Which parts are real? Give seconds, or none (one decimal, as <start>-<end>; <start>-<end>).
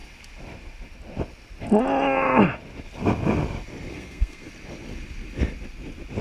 0.0-3.9; 4.5-6.2